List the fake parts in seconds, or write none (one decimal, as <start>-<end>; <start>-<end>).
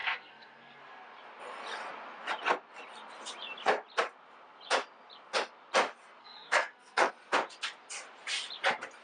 0.0-0.8; 6.2-7.1